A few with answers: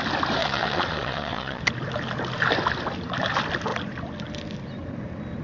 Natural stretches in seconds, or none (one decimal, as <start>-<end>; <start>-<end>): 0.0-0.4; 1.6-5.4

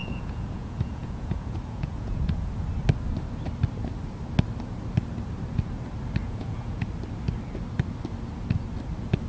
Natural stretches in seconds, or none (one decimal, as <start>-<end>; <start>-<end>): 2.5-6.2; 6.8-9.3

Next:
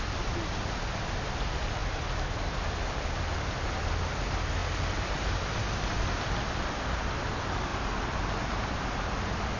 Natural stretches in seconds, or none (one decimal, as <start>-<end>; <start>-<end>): 0.0-9.6

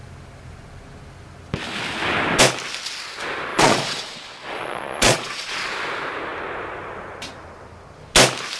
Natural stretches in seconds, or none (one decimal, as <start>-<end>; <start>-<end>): 0.0-3.5; 5.5-8.6

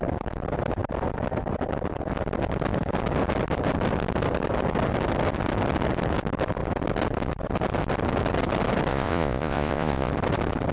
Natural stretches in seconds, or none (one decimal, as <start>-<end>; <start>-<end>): 0.0-8.9; 10.1-10.7

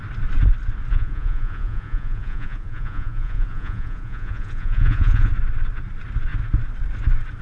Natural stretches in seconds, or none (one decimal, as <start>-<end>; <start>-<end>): 0.0-0.9; 5.3-7.4

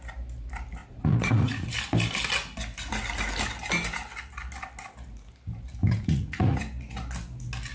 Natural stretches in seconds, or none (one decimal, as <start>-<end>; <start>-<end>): 0.0-0.8; 1.7-5.8; 6.6-7.7